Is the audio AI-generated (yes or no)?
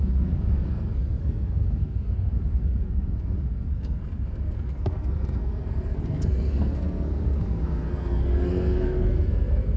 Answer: yes